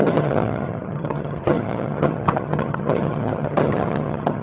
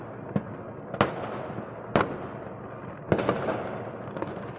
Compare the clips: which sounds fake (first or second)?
first